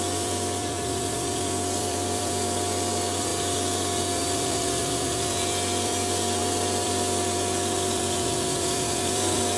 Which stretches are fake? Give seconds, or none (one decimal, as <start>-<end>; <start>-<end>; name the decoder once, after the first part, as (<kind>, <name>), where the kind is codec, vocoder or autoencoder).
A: 0.0-3.3 (vocoder, BigVGAN v2); 4.2-9.6